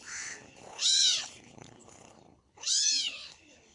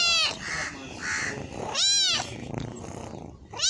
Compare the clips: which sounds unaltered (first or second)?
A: second